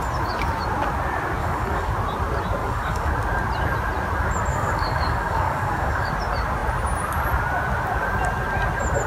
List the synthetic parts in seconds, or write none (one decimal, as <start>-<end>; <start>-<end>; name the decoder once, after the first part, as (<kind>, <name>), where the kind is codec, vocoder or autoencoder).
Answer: 1.4-1.9 (codec, DAC); 2.6-3.1; 4.5-6.1